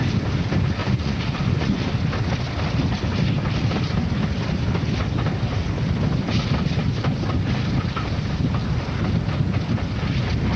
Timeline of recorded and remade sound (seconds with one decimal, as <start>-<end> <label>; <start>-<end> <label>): 0.0-0.8 recorded; 0.8-1.9 remade; 1.9-10.6 recorded